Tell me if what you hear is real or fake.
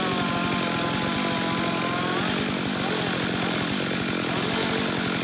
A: real